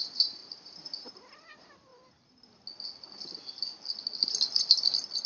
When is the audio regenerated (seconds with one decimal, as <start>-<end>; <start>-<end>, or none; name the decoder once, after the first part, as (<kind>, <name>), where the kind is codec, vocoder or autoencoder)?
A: 0.0-1.9 (vocoder, BigVGAN v2)